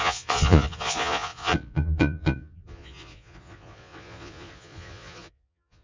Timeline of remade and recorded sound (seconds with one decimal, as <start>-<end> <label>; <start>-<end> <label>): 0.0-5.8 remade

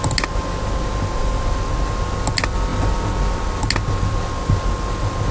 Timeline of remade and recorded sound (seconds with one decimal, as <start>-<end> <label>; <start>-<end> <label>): 0.0-5.3 recorded

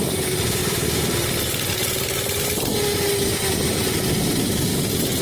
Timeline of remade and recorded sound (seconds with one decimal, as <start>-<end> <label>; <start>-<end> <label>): 0.0-4.7 recorded; 4.7-5.2 remade

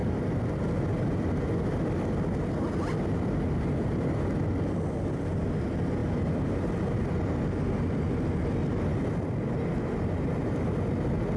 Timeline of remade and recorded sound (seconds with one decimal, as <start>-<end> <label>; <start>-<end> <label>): 0.0-0.6 remade; 0.6-11.4 recorded

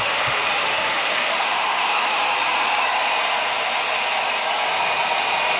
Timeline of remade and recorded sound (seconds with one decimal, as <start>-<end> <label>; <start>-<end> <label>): 0.0-2.2 remade; 2.2-5.6 recorded